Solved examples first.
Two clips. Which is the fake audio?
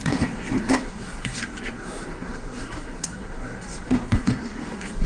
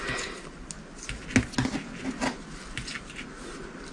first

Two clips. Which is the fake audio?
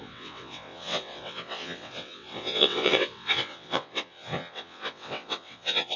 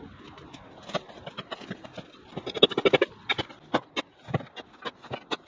first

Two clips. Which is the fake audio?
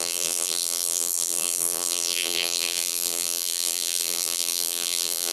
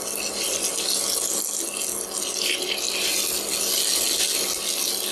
first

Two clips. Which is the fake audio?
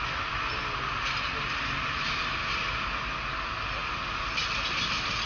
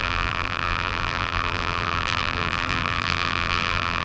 second